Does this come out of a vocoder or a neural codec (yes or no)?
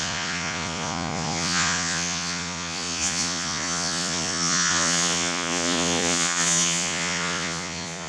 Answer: yes